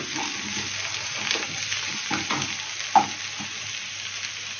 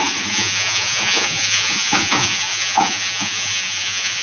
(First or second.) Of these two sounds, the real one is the first